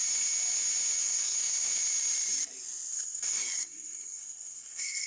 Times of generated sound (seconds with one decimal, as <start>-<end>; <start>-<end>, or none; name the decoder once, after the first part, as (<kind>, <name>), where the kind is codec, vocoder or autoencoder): 1.0-1.7 (codec, SNAC); 2.9-5.1